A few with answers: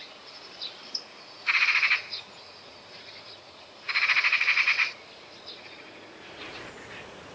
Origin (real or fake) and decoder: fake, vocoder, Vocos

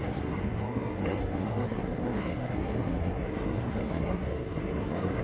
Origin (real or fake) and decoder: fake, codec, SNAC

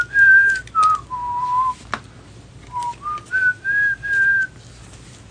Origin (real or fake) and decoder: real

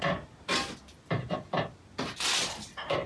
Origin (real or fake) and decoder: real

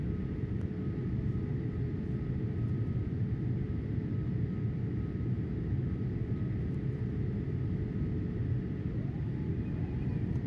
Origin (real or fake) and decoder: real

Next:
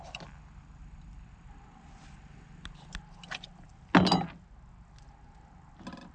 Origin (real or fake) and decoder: real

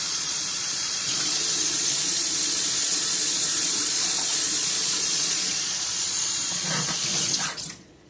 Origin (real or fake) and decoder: fake, vocoder, Vocos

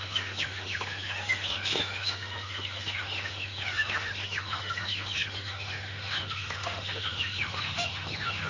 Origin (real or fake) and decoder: fake, autoencoder, DAC-VAE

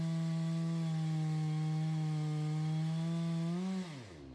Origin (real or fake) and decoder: real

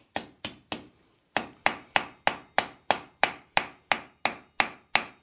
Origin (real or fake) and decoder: real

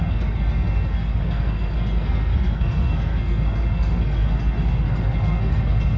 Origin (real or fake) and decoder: fake, codec, SNAC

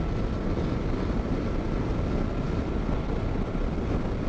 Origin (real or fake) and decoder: real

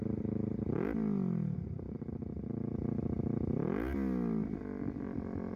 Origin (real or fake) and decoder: real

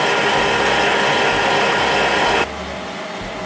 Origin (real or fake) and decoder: real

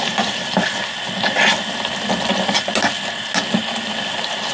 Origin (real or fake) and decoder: real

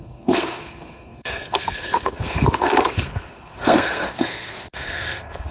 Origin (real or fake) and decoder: fake, codec, SNAC